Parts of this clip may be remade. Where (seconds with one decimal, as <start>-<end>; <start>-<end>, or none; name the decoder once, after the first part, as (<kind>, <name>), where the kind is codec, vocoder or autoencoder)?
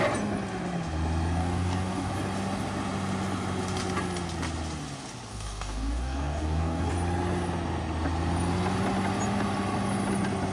1.4-2.1 (codec, DAC); 5.3-6.9